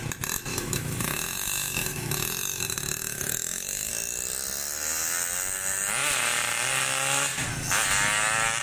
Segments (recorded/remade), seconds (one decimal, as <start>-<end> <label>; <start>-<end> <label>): 0.0-0.5 recorded; 0.5-3.9 remade; 3.9-8.6 recorded